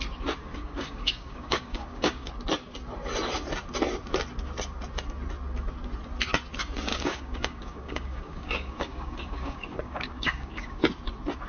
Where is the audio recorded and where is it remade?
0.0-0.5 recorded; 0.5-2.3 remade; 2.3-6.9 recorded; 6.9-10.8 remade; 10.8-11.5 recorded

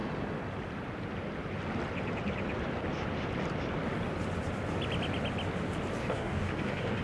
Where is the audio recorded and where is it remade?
0.0-6.0 recorded; 6.0-7.0 remade

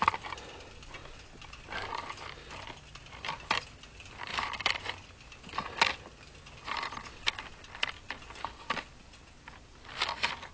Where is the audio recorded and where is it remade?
0.0-10.5 recorded

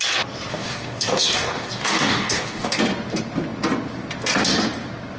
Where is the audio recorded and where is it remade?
0.0-0.5 recorded; 0.5-2.8 remade; 2.8-5.2 recorded

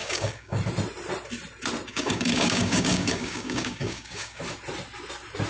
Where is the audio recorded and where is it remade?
0.0-0.6 remade; 0.6-1.9 recorded; 1.9-4.4 remade; 4.4-5.5 recorded

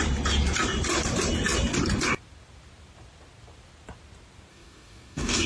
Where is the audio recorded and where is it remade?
0.0-4.5 recorded; 4.5-5.5 remade

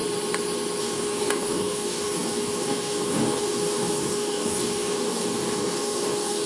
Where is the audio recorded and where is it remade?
0.0-0.8 recorded; 0.8-6.5 remade